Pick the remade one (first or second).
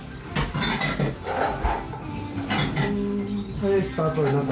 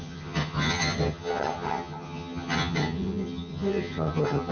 second